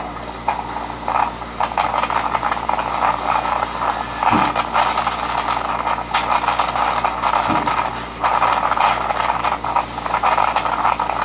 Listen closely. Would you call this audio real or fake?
real